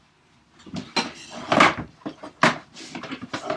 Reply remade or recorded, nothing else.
recorded